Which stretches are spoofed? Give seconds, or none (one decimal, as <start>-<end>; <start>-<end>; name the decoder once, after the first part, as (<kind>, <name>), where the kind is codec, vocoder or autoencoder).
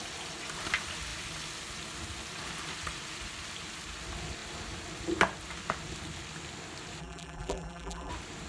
7.0-8.1 (vocoder, BigVGAN v2)